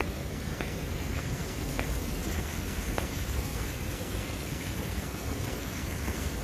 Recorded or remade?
remade